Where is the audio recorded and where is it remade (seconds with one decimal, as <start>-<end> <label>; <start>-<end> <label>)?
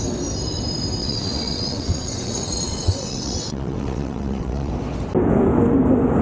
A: 0.0-1.0 recorded; 1.0-4.7 remade; 4.7-6.2 recorded